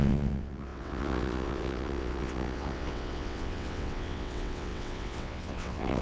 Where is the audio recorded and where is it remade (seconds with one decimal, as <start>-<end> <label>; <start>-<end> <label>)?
0.0-6.0 remade